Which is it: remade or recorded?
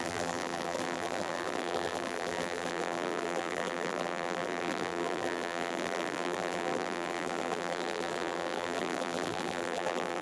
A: remade